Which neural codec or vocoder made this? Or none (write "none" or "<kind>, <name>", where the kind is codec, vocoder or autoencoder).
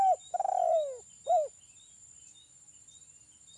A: none